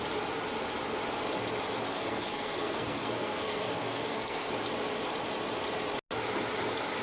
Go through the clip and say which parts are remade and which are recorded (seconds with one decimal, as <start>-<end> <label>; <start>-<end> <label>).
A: 0.0-1.9 recorded; 1.9-4.5 remade; 4.5-7.0 recorded